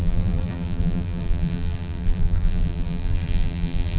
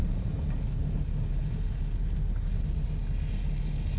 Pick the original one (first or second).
second